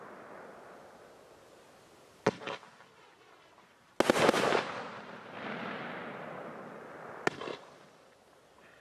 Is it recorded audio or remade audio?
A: recorded